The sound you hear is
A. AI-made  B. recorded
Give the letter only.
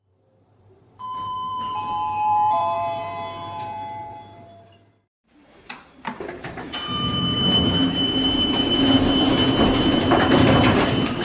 A